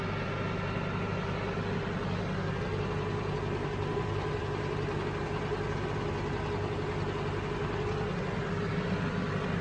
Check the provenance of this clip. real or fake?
real